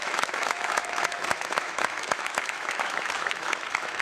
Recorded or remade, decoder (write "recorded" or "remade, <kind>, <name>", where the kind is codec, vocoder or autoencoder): remade, autoencoder, DAC-VAE